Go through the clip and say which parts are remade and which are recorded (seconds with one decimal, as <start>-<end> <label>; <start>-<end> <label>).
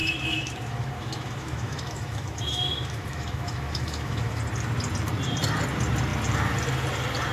0.0-4.4 remade; 4.4-7.3 recorded